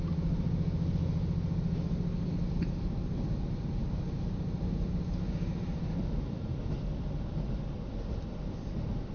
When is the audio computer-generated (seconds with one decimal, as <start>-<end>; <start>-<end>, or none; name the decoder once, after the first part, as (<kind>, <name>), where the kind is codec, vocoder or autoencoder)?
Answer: none

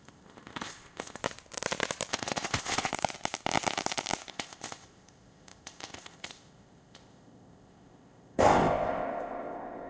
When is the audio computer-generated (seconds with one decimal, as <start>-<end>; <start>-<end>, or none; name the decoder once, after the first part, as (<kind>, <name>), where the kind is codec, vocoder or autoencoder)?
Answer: 0.0-1.2 (codec, ZipCodec); 2.1-2.9; 4.3-9.9

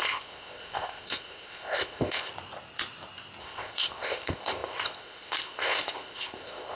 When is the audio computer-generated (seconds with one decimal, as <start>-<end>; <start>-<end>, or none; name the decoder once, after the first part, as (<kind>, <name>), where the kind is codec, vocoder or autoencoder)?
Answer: 0.0-2.3 (codec, ZipCodec); 3.4-6.8

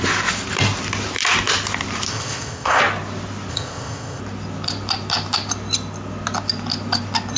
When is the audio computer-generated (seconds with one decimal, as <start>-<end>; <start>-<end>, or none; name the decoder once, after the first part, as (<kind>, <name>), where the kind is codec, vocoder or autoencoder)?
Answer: 2.1-2.8 (codec, ZipCodec); 3.5-4.2

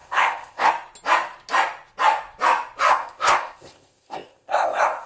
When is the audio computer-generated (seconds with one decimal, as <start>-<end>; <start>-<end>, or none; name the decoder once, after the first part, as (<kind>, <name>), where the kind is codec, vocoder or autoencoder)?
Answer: 0.0-0.7 (codec, ZipCodec); 2.9-5.1

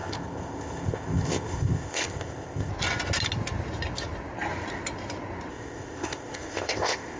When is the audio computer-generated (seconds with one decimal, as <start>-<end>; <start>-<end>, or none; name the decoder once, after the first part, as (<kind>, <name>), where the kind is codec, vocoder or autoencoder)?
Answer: 0.0-2.7 (codec, ZipCodec); 5.5-7.2